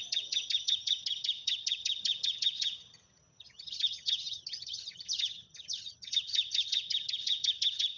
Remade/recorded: remade